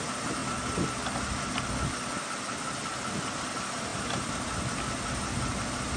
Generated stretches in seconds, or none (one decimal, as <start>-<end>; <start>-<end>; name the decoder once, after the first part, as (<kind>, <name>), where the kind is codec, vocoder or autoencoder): 0.0-0.4 (vocoder, BigVGAN v2); 3.5-6.0